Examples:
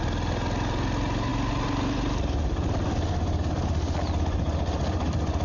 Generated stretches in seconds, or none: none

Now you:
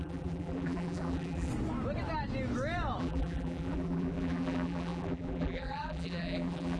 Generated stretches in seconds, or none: 0.0-1.5 (vocoder, BigVGAN v2); 3.0-6.8